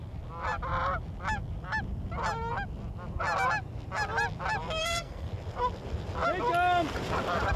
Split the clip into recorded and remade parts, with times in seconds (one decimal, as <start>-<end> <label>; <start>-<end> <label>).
0.0-4.8 recorded; 4.8-5.3 remade; 5.3-7.6 recorded